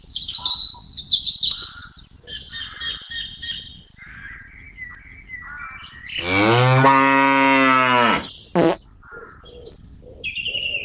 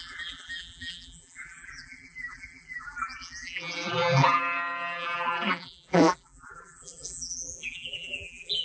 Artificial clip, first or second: second